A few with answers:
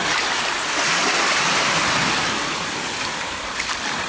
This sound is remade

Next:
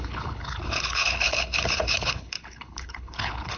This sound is remade